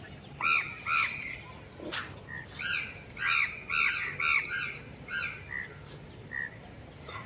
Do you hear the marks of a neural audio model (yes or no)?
no